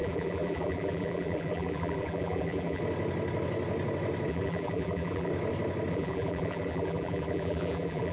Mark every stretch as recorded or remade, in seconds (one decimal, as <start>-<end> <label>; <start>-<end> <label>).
0.0-2.8 remade; 2.8-4.3 recorded; 4.3-5.3 remade; 5.3-5.9 recorded; 5.9-8.1 remade